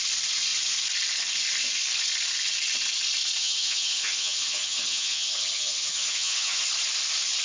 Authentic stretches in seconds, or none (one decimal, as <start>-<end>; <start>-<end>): 0.0-3.4; 6.6-7.4